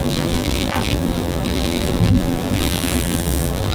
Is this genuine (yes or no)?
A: no